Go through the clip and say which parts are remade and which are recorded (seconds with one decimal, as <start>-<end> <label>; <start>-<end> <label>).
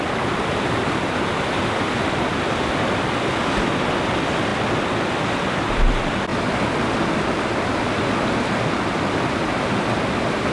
0.0-10.5 recorded